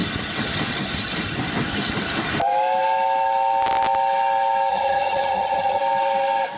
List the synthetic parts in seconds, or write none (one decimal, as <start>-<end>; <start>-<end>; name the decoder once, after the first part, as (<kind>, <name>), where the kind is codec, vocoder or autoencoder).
4.7-5.8 (vocoder, HiFi-GAN)